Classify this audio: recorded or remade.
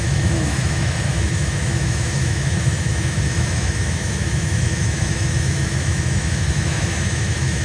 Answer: remade